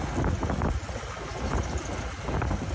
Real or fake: real